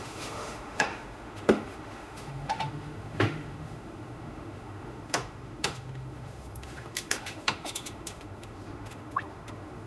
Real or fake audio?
fake